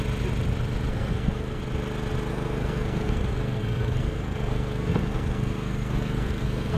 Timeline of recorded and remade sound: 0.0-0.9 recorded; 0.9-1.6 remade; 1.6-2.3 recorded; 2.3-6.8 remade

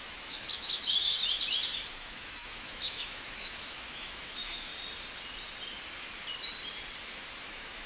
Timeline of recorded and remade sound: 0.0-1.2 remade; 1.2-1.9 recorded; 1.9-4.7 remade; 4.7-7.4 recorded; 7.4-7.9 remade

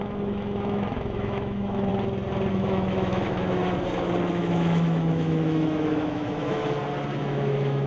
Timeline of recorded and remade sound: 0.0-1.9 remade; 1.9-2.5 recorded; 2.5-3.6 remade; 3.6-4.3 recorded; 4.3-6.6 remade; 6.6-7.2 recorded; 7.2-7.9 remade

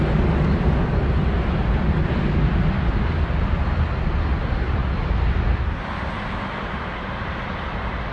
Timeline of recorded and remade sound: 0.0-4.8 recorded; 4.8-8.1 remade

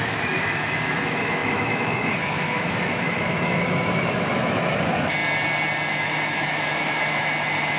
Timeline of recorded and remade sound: 0.0-5.2 remade; 5.2-5.9 recorded; 5.9-7.8 remade